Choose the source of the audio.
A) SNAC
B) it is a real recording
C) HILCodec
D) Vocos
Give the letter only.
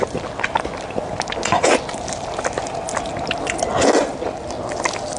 B